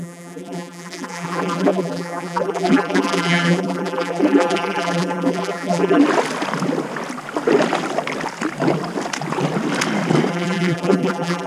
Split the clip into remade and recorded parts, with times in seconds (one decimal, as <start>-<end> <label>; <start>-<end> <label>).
0.0-6.0 remade; 6.0-10.3 recorded; 10.3-11.5 remade